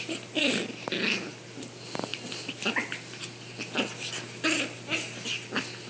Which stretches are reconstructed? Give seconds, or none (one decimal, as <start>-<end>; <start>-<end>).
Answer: none